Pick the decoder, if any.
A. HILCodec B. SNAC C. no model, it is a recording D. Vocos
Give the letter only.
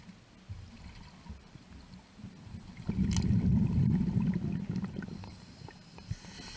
C